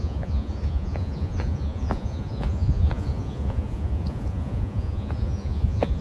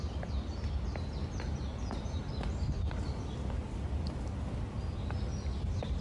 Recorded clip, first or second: second